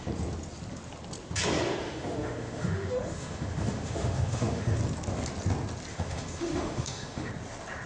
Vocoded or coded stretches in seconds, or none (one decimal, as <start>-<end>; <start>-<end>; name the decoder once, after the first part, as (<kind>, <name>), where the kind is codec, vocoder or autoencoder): 1.8-4.8 (autoencoder, DAC-VAE); 5.9-7.3